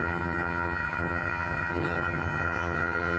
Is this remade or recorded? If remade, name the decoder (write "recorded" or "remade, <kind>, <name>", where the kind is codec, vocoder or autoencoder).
remade, vocoder, HiFi-GAN